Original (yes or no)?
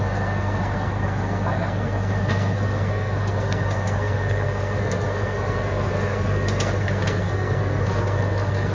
no